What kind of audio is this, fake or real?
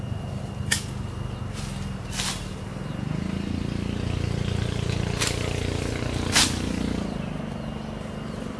real